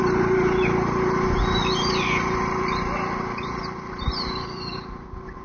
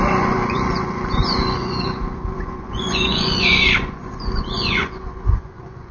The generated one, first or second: second